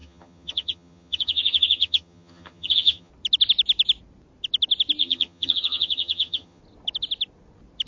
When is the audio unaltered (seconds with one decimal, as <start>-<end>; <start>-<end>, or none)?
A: 3.1-5.0; 6.6-7.9